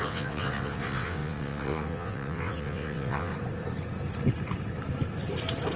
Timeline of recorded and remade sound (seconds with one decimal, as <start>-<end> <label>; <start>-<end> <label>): 0.0-3.3 remade; 3.3-5.8 recorded